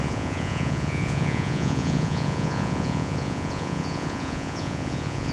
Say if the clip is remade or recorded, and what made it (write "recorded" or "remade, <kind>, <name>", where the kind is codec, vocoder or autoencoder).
remade, vocoder, Vocos